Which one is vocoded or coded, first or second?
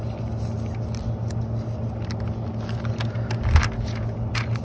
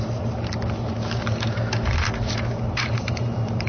second